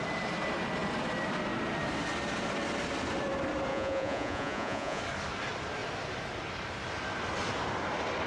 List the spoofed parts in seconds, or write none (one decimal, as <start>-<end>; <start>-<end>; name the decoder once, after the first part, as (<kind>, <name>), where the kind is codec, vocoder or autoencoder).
3.7-5.0 (vocoder, Vocos)